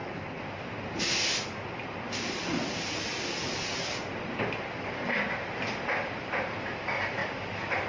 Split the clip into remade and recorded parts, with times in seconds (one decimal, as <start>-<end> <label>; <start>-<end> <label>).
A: 0.0-7.9 recorded